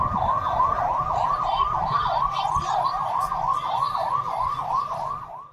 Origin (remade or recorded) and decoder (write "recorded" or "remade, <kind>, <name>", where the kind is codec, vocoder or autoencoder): recorded